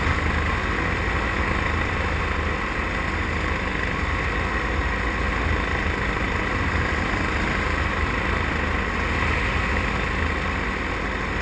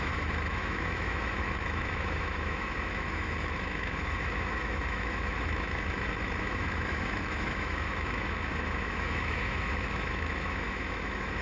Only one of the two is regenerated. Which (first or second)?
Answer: second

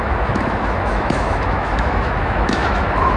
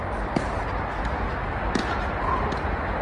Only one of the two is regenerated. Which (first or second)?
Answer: first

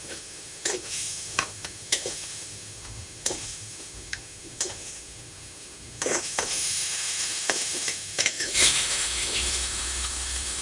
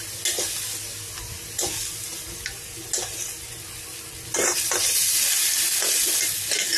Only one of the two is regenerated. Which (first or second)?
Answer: first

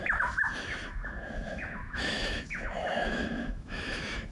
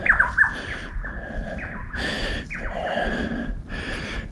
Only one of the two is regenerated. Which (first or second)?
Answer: first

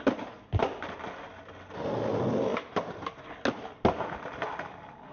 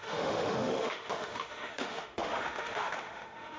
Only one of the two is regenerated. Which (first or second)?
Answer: second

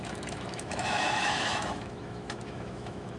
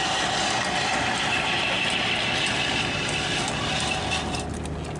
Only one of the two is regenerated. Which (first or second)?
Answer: first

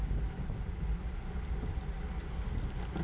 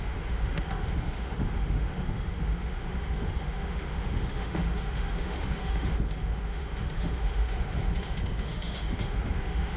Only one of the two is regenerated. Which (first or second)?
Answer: second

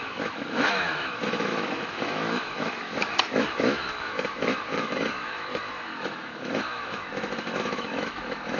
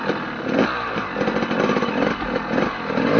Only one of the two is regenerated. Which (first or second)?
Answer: first